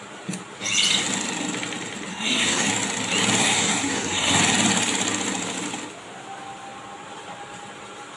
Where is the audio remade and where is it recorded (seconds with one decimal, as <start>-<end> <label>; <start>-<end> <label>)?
0.0-2.1 recorded; 2.1-2.7 remade; 2.7-3.4 recorded; 3.4-4.4 remade; 4.4-8.2 recorded